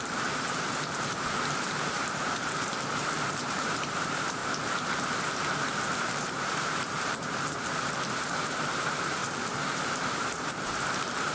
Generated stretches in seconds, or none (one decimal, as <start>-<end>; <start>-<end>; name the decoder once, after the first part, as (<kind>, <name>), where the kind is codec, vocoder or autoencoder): 0.0-4.4 (vocoder, BigVGAN v2); 6.0-11.3